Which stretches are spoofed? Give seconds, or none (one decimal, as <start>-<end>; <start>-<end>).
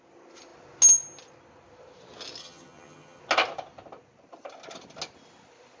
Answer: 2.4-3.2